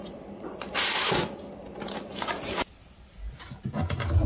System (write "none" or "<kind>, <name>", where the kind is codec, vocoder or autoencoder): none